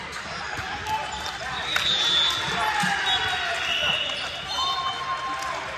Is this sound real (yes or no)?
yes